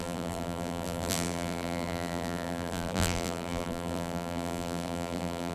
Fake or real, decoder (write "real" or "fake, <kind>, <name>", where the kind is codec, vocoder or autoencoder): fake, vocoder, BigVGAN v2